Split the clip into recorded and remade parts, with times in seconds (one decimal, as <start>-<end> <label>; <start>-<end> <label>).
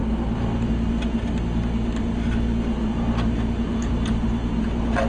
0.0-5.1 recorded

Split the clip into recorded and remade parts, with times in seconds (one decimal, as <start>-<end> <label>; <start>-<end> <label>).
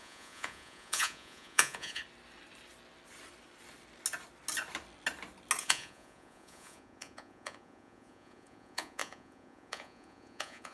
0.0-2.0 remade; 2.0-5.6 recorded; 5.6-10.7 remade